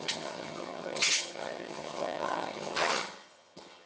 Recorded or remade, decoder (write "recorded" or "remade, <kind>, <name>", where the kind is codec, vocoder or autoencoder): remade, vocoder, HiFi-GAN